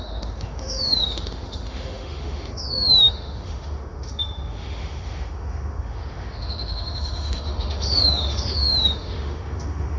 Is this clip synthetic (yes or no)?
yes